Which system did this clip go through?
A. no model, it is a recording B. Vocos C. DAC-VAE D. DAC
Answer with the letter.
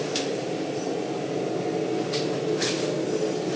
A